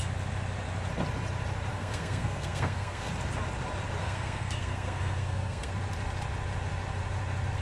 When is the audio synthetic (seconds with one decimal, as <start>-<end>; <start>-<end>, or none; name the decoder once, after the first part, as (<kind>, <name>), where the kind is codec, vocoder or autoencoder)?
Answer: 1.7-3.1 (codec, SNAC); 4.0-5.7

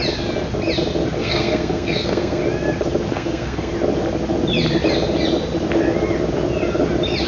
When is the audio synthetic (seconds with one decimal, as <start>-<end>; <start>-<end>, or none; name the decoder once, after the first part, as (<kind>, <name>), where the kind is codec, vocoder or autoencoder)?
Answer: 1.2-2.4 (codec, SNAC); 3.1-3.7

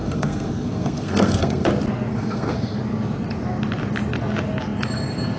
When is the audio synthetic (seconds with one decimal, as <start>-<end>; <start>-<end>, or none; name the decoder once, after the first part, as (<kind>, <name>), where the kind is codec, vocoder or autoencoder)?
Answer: 0.0-1.7 (codec, SNAC); 2.1-2.8

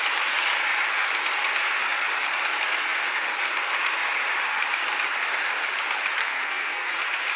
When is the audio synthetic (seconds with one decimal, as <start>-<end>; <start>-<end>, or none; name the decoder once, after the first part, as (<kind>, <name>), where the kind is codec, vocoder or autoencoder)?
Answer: 6.2-6.9 (codec, SNAC)